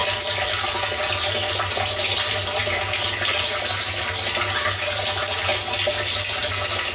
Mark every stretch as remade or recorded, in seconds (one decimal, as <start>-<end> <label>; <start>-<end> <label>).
0.0-6.9 recorded